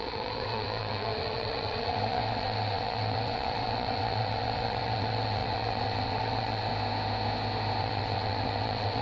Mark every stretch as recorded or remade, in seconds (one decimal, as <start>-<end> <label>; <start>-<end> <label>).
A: 0.0-6.7 remade; 6.7-7.8 recorded; 7.8-9.0 remade